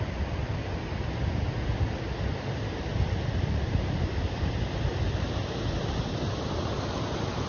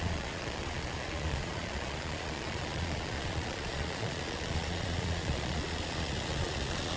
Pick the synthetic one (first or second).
second